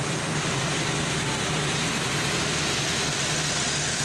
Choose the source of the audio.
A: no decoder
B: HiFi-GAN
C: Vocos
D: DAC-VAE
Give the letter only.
A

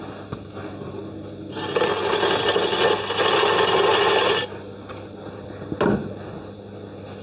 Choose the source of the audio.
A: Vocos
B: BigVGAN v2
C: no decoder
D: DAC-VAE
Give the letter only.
C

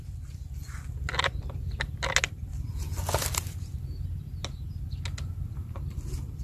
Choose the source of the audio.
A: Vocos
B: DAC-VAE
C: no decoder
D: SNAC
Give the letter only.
C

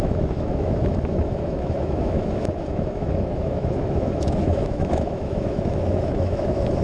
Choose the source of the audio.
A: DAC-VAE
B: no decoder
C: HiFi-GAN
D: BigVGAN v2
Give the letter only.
A